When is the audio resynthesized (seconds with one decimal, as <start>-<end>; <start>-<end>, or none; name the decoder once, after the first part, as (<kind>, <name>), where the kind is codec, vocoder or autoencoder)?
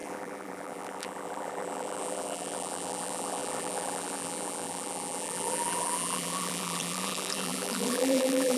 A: 0.0-8.6 (vocoder, BigVGAN v2)